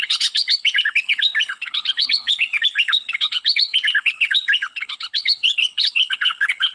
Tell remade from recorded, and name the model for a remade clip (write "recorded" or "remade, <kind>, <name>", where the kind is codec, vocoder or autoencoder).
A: remade, codec, HILCodec